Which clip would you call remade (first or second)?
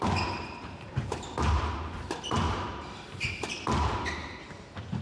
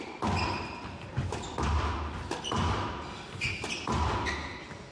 first